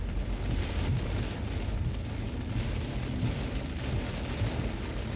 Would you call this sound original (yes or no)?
yes